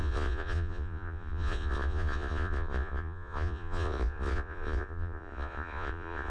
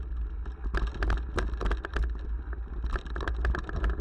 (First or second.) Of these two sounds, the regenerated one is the first